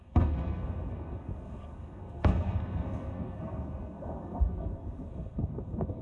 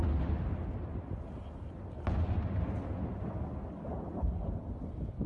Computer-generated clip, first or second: first